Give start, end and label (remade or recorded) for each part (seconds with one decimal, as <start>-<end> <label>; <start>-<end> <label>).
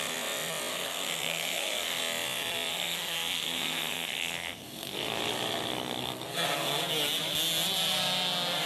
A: 0.0-0.7 recorded; 0.7-2.0 remade; 2.0-2.7 recorded; 2.7-5.2 remade; 5.2-5.7 recorded; 5.7-6.8 remade; 6.8-8.7 recorded